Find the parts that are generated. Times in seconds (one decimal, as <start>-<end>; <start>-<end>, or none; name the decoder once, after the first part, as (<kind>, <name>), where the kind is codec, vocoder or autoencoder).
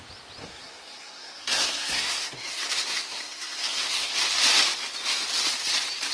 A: 0.4-4.1 (codec, SNAC)